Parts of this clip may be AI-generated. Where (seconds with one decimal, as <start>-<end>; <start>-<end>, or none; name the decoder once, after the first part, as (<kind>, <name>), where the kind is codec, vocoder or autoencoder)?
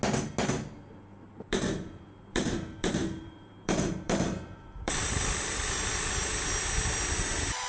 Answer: 1.5-5.1 (vocoder, BigVGAN v2)